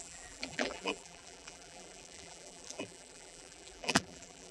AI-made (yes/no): yes